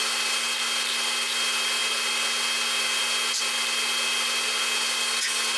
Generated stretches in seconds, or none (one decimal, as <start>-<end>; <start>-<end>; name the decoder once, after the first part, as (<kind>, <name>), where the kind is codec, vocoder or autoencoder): none